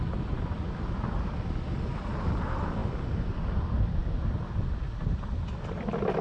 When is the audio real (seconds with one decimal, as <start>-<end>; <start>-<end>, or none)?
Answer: 0.0-6.2